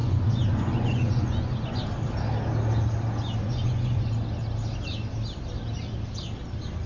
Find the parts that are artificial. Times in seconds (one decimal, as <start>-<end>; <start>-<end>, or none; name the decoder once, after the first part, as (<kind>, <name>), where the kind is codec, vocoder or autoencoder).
0.0-1.8 (vocoder, Vocos); 3.4-4.1